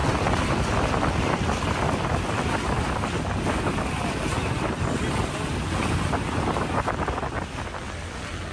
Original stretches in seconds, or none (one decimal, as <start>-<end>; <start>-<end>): 0.0-8.5